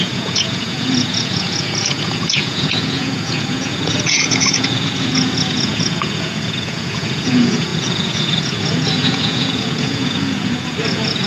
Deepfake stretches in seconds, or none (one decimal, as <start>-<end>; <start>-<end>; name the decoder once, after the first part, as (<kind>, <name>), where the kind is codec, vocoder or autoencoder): 0.0-11.3 (vocoder, Vocos)